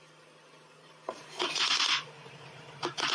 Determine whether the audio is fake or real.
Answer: real